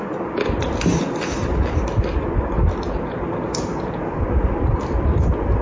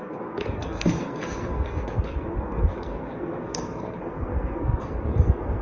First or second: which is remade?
second